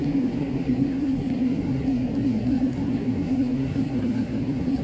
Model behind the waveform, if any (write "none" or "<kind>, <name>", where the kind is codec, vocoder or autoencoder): codec, SNAC